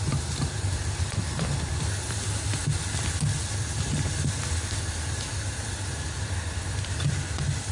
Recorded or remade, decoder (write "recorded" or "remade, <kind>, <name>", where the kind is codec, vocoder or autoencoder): recorded